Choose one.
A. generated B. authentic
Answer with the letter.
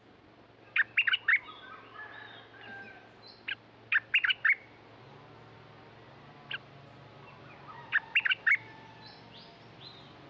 B